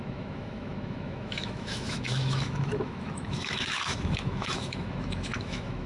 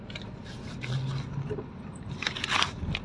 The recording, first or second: second